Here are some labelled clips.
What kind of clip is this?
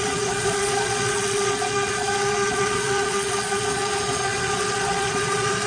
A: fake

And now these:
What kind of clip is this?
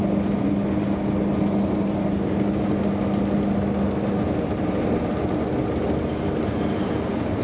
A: real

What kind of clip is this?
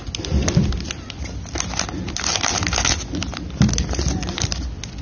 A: real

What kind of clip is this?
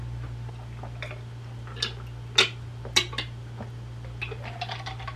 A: real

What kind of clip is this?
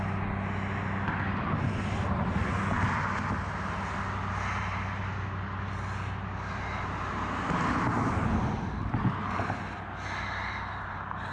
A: real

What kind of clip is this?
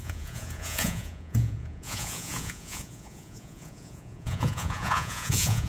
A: fake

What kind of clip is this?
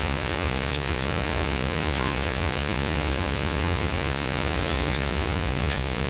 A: fake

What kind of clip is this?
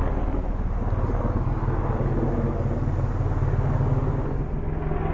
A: real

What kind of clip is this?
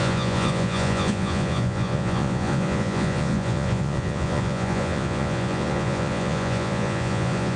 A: fake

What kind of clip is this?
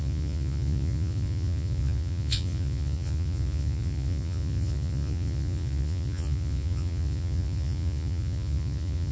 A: fake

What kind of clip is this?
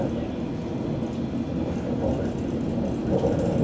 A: real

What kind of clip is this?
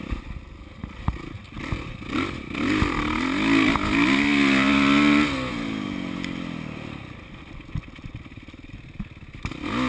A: real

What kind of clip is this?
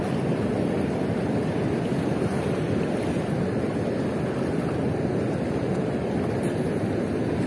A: real